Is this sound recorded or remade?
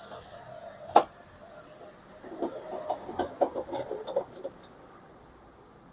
recorded